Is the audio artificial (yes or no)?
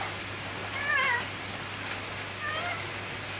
no